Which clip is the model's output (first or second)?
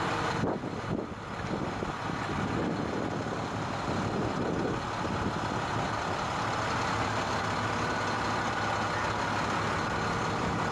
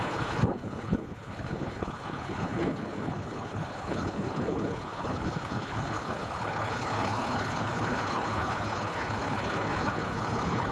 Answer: second